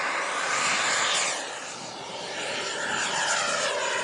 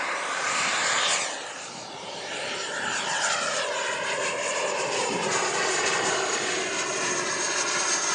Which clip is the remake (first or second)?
second